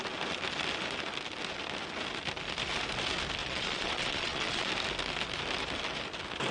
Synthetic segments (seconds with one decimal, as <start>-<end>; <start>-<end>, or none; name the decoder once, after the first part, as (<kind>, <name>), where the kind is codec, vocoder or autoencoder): 3.4-4.7 (vocoder, Vocos)